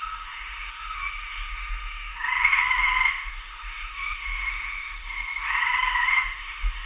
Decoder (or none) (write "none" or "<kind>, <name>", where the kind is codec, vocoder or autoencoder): autoencoder, DAC-VAE